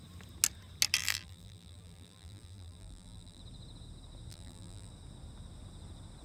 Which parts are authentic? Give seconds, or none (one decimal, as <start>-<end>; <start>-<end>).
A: 0.0-1.0; 3.4-4.3; 4.9-6.2